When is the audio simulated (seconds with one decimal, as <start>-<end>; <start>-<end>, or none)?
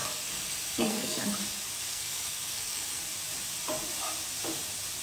0.0-1.2; 1.9-3.0